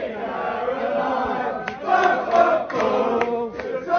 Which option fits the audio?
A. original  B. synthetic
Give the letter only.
A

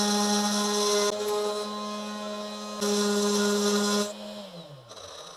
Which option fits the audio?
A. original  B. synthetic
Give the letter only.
A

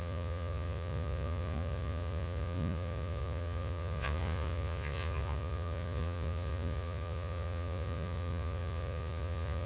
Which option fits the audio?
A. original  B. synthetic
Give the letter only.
B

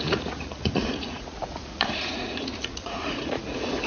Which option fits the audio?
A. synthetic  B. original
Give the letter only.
A